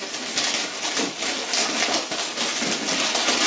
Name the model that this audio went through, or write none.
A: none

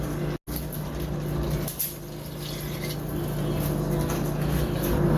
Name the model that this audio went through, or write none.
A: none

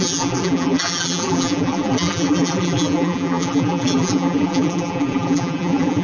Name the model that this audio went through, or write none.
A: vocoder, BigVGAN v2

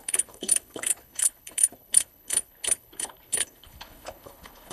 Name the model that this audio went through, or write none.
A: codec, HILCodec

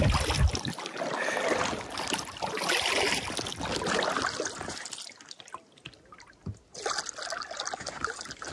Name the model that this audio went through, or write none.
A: none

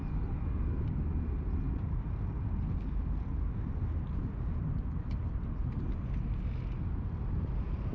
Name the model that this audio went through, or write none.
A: none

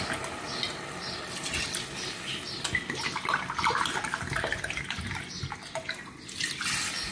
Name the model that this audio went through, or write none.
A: none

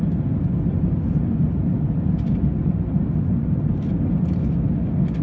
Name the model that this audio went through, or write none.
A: none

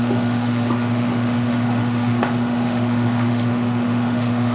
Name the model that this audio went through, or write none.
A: autoencoder, DAC-VAE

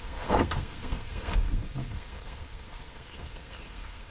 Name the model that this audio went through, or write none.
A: codec, SNAC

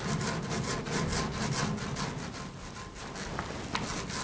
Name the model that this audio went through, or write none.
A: none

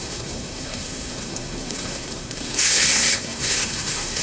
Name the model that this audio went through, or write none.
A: codec, SNAC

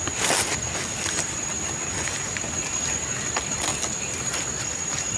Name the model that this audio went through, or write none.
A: none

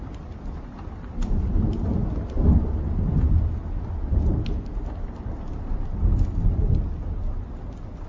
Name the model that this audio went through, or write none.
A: none